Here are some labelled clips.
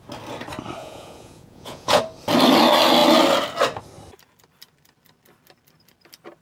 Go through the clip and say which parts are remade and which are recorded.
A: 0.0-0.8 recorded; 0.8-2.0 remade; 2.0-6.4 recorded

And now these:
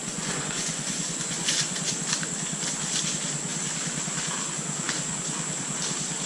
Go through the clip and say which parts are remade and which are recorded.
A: 0.0-2.0 remade; 2.0-6.3 recorded

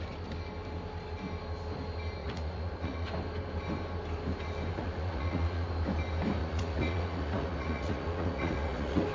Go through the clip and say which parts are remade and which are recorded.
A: 0.0-2.2 recorded; 2.2-3.1 remade; 3.1-4.7 recorded; 4.7-5.7 remade; 5.7-6.4 recorded; 6.4-9.1 remade

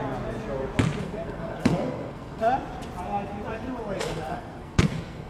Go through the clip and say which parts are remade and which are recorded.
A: 0.0-1.0 recorded; 1.0-2.4 remade; 2.4-4.0 recorded; 4.0-5.3 remade

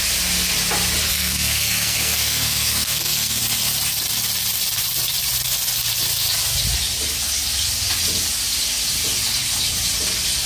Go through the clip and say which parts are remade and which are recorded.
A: 0.0-1.1 recorded; 1.1-3.4 remade; 3.4-10.5 recorded

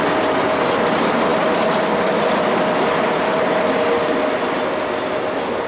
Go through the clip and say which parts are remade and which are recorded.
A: 0.0-5.7 recorded